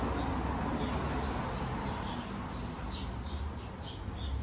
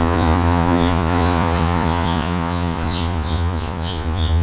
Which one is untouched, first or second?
first